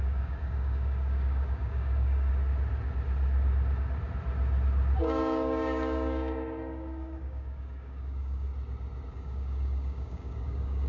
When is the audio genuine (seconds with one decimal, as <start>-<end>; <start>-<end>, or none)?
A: 2.3-5.0; 8.5-9.1